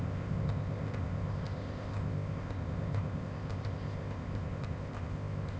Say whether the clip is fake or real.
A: fake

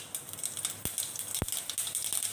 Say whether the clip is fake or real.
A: real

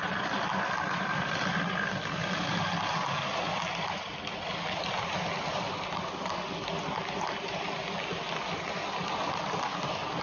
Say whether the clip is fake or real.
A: real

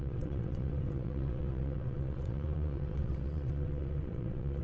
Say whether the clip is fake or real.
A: fake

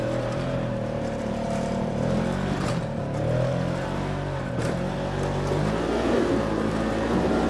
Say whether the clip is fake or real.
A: fake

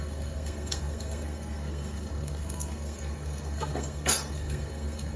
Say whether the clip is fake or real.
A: fake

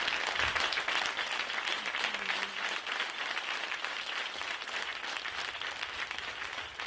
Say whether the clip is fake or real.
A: real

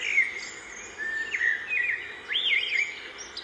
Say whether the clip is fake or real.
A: real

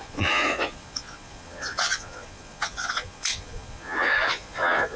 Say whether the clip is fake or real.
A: fake